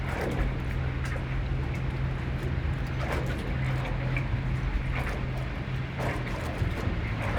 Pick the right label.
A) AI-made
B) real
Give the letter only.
B